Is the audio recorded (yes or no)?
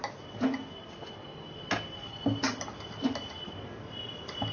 yes